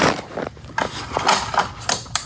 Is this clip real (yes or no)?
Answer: yes